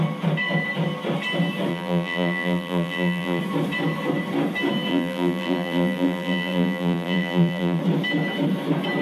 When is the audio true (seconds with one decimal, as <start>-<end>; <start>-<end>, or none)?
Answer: 0.0-1.7; 3.4-4.9; 7.8-9.0